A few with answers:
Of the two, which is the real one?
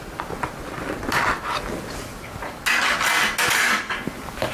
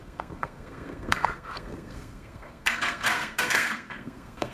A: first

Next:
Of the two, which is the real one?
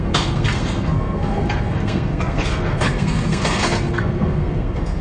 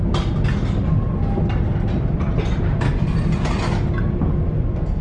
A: second